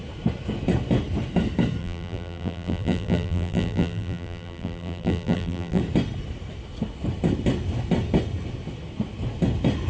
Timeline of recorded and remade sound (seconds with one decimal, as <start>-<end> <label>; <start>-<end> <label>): 0.0-1.8 recorded; 1.8-5.8 remade; 5.8-9.9 recorded